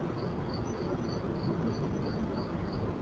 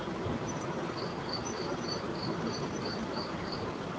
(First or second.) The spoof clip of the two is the second